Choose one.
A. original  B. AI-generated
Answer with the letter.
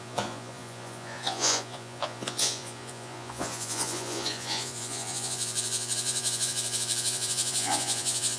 B